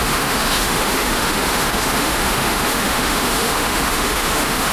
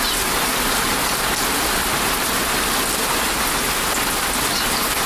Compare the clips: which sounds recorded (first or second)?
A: second